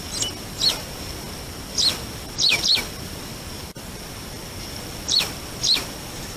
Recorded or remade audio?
recorded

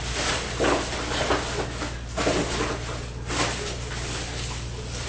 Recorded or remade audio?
recorded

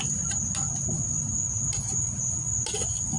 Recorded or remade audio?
recorded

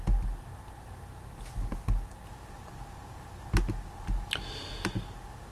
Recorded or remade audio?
recorded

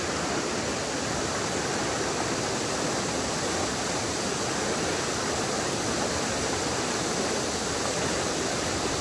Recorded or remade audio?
recorded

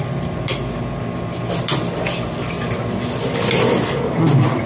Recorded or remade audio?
recorded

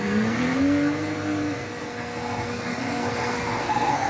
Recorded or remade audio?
remade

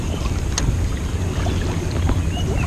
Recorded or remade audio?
recorded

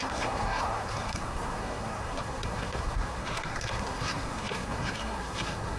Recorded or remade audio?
remade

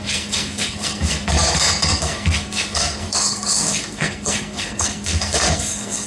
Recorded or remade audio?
remade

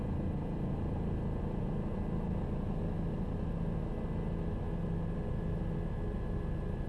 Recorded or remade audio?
recorded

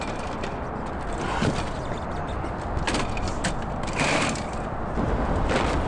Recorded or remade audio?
recorded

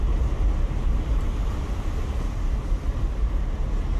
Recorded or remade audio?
recorded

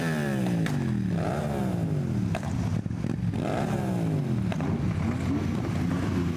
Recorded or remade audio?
recorded